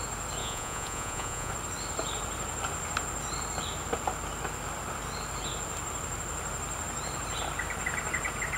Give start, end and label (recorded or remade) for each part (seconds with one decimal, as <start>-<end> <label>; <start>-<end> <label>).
0.0-0.4 recorded; 0.4-1.5 remade; 1.5-8.6 recorded